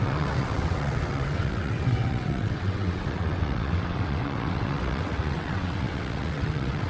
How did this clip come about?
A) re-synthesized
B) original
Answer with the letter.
A